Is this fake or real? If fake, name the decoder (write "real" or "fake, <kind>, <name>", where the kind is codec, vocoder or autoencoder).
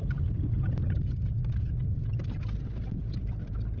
real